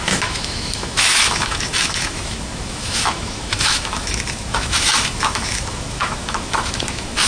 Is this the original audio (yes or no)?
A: no